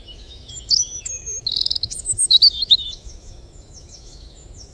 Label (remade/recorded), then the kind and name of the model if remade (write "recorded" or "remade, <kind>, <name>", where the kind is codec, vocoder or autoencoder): remade, autoencoder, DAC-VAE